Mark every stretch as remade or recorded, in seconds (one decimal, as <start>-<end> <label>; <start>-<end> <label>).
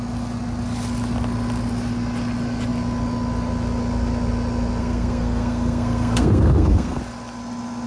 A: 0.0-4.8 recorded; 4.8-7.0 remade; 7.0-7.9 recorded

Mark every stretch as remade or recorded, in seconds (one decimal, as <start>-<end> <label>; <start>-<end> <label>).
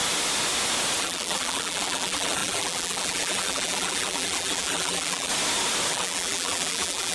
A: 0.0-1.0 recorded; 1.0-5.3 remade; 5.3-5.9 recorded; 5.9-7.1 remade